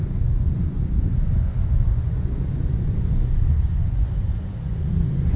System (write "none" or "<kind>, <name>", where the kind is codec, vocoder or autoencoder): vocoder, Vocos